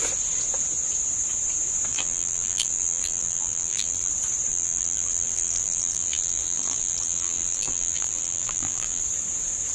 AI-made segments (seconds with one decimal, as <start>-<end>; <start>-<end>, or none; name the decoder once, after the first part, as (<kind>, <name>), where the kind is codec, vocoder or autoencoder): 1.9-4.1 (vocoder, BigVGAN v2); 4.5-9.0